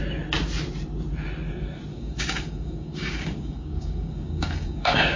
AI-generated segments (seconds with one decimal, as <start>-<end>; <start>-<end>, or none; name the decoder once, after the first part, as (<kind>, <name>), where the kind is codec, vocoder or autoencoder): 1.9-5.2 (codec, DAC)